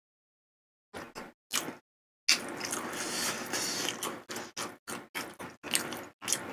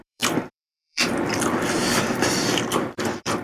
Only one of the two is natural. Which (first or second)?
first